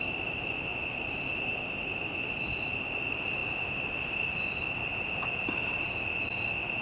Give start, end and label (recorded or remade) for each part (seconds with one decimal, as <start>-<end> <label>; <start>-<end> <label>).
0.0-6.8 recorded